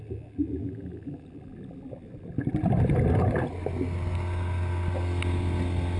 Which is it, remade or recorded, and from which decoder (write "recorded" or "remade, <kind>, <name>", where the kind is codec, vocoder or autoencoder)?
recorded